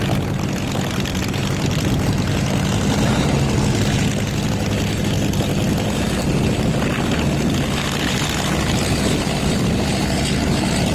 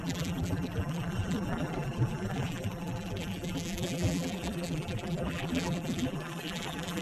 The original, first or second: first